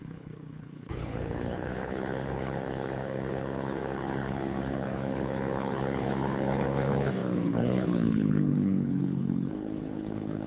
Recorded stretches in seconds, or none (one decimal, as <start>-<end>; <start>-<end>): none